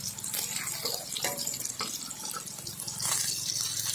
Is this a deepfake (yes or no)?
no